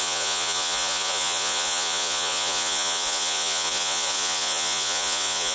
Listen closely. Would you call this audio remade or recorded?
remade